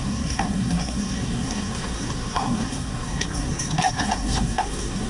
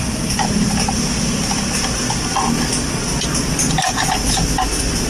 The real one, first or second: second